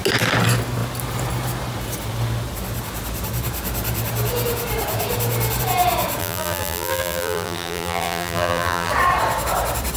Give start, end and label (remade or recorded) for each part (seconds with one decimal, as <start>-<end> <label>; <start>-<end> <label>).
0.0-6.2 recorded; 6.2-8.9 remade; 8.9-10.0 recorded

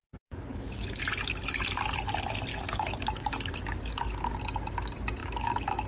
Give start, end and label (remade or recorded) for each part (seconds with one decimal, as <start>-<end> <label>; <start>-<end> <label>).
0.0-1.0 remade; 1.0-2.5 recorded; 2.5-4.4 remade; 4.4-5.2 recorded; 5.2-5.9 remade

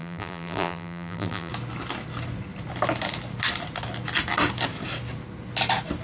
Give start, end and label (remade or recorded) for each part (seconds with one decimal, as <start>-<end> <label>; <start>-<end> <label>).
0.0-1.5 remade; 1.5-6.0 recorded

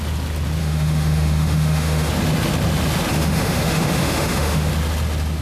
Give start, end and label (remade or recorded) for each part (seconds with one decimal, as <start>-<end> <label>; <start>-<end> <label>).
0.0-0.6 recorded; 0.6-2.1 remade; 2.1-3.1 recorded; 3.1-4.7 remade; 4.7-5.4 recorded

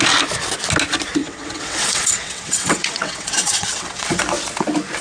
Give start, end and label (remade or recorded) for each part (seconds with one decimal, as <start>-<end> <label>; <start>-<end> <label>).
0.0-1.2 recorded; 1.2-4.2 remade; 4.2-5.0 recorded

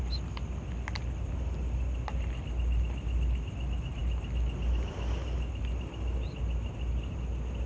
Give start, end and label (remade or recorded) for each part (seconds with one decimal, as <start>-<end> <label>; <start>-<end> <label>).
0.0-7.7 recorded

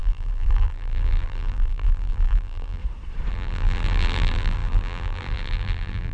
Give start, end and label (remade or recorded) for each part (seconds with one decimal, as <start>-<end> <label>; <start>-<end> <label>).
0.0-2.8 remade; 2.8-3.3 recorded; 3.3-6.1 remade